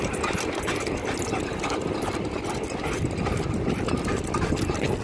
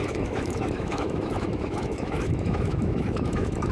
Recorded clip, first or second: first